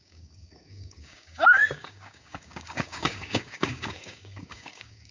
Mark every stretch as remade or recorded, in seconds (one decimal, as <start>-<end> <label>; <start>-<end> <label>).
0.0-5.1 remade